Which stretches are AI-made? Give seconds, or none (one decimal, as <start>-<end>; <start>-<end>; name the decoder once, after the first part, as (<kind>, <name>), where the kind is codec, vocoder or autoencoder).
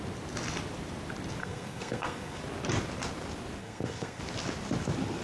1.4-2.4 (codec, SNAC); 3.6-4.2